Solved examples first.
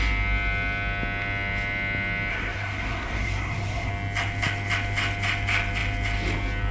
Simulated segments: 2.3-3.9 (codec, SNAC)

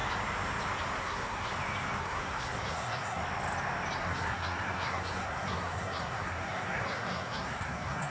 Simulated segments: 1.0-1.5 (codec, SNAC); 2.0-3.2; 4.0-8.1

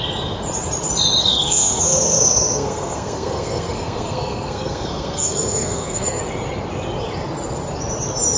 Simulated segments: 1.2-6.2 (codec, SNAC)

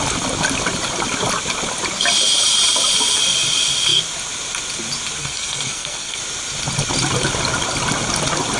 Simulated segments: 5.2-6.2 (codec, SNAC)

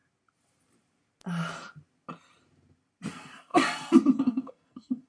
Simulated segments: 3.1-5.1 (codec, SNAC)

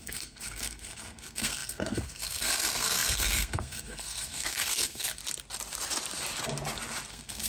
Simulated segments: 0.0-5.2 (codec, SNAC); 7.1-7.5